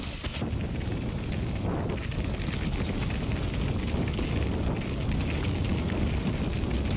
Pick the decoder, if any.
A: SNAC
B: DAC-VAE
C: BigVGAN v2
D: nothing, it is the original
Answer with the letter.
D